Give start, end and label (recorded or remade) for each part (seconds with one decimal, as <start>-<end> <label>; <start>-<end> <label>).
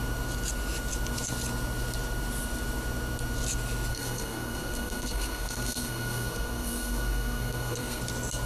0.0-3.9 recorded; 3.9-8.0 remade; 8.0-8.5 recorded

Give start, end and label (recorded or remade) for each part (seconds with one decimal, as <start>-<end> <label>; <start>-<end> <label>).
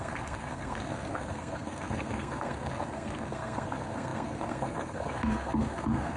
0.0-6.2 remade